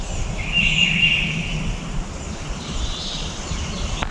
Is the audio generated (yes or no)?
no